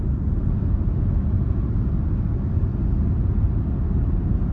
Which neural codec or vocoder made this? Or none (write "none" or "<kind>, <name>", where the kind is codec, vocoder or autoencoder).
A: none